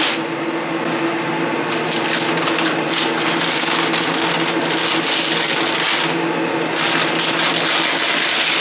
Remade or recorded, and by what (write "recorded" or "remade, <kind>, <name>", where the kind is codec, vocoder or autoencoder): recorded